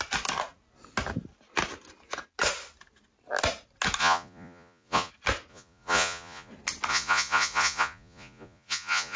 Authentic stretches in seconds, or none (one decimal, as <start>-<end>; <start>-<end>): 0.0-4.0; 5.1-5.5; 6.5-6.9